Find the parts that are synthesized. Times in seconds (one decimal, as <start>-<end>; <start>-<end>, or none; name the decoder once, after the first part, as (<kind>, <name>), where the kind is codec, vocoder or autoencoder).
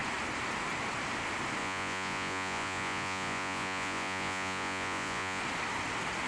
1.6-5.4 (vocoder, Vocos)